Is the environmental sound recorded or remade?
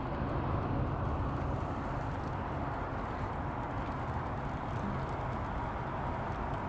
recorded